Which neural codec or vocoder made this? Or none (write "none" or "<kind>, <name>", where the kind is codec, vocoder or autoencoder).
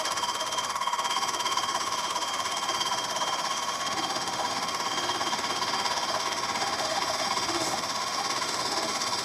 autoencoder, DAC-VAE